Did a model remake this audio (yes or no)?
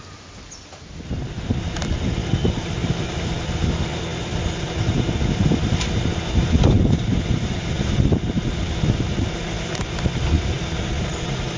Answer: no